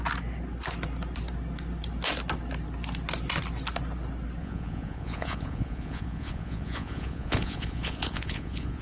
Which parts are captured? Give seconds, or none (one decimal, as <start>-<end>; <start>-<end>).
0.0-4.4